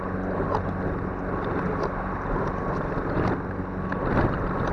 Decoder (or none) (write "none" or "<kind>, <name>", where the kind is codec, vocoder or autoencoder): none